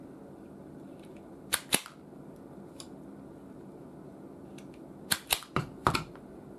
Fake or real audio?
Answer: real